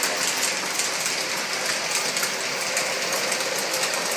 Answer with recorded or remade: recorded